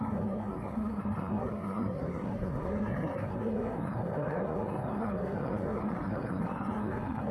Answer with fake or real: fake